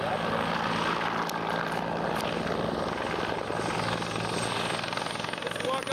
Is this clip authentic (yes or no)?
yes